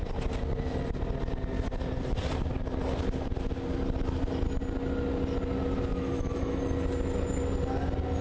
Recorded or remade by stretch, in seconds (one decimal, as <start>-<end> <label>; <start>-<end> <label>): 0.0-5.9 recorded; 5.9-6.6 remade; 6.6-8.2 recorded